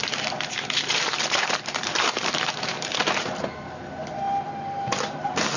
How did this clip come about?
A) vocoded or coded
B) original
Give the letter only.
A